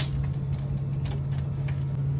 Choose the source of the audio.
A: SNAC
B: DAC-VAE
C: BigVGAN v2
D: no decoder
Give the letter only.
D